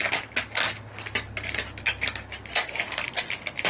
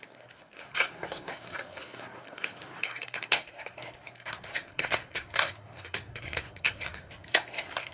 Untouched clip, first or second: first